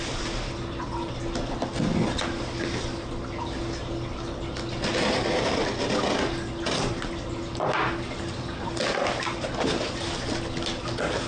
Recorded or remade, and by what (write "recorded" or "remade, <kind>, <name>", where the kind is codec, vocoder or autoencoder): recorded